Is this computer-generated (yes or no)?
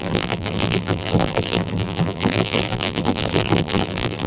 yes